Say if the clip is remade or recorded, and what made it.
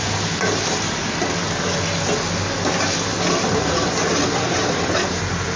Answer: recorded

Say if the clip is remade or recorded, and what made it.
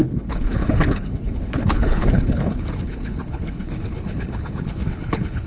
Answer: remade, codec, HILCodec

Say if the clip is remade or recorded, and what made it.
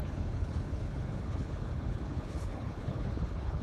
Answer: remade, codec, HILCodec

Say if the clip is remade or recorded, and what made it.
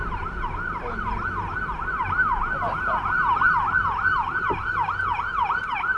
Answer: recorded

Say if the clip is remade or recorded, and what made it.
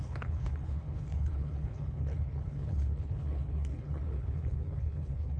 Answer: remade, codec, HILCodec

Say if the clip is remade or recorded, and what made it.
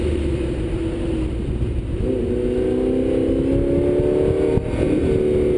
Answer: recorded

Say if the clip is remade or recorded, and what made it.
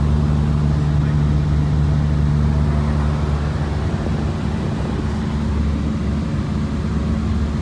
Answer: recorded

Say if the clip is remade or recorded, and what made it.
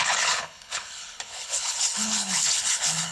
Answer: remade, codec, HILCodec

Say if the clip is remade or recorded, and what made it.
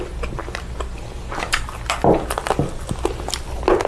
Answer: recorded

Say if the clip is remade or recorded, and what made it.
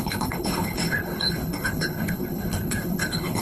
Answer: remade, codec, HILCodec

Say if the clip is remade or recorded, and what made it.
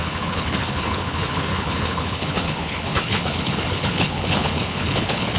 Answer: remade, codec, HILCodec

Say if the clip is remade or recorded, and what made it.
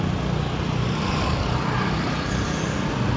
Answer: recorded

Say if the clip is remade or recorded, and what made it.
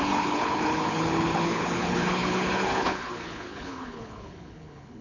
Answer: remade, codec, HILCodec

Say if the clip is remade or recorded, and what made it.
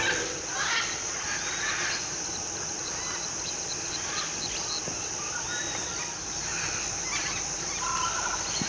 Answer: recorded